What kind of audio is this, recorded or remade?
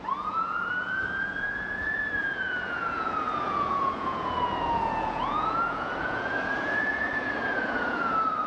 remade